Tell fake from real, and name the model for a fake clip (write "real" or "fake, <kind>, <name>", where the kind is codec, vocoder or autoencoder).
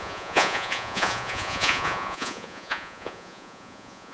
fake, vocoder, Vocos